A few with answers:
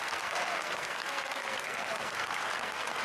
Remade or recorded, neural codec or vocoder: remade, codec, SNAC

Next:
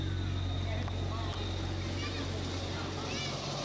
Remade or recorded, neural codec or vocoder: recorded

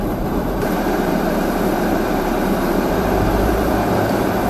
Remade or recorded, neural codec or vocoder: remade, vocoder, BigVGAN v2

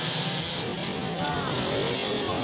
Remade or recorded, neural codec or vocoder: recorded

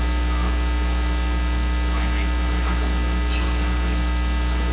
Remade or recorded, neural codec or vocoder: recorded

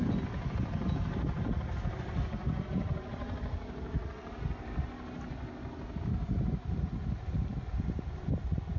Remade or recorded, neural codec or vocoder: recorded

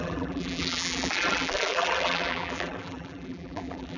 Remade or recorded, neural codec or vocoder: remade, vocoder, BigVGAN v2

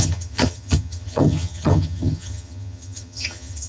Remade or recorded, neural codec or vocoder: remade, vocoder, HiFi-GAN